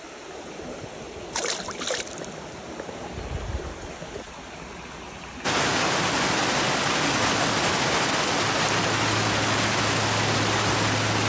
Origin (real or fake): real